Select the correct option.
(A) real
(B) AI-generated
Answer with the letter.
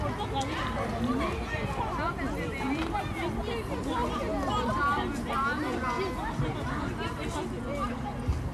A